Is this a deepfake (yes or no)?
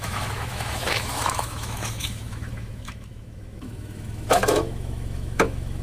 yes